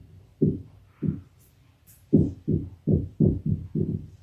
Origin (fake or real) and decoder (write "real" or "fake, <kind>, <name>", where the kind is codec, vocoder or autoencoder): real